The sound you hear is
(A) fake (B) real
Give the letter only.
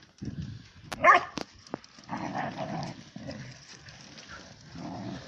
B